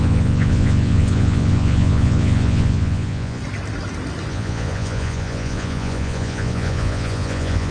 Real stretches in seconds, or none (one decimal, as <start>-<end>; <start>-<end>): 3.4-4.3